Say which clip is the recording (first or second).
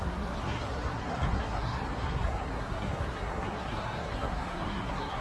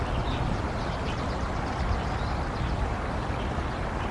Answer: second